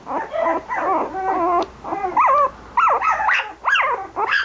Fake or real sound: real